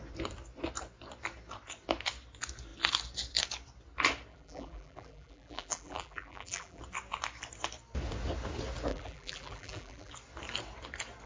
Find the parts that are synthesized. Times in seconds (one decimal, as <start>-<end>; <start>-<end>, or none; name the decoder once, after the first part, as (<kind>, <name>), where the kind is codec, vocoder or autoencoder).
4.3-6.8 (vocoder, BigVGAN v2); 8.9-10.1